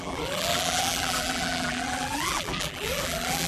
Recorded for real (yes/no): no